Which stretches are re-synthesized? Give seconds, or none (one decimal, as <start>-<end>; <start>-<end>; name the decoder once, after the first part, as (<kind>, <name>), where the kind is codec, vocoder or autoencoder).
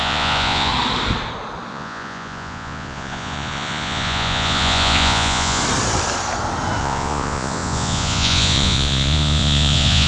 0.0-0.7 (vocoder, Vocos); 1.7-5.6; 6.8-10.1